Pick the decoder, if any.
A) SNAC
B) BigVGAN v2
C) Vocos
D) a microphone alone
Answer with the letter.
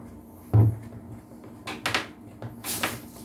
D